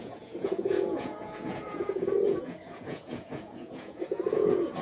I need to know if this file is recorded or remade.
remade